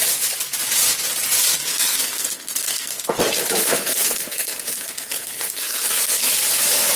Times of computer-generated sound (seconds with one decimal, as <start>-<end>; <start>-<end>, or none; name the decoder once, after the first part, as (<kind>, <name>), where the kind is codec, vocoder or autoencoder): 1.7-3.2 (codec, SNAC); 3.6-6.3